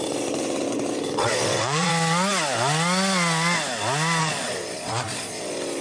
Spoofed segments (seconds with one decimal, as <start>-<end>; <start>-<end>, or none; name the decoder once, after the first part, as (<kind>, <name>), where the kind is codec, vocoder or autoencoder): 0.0-1.9 (vocoder, Vocos); 4.2-5.8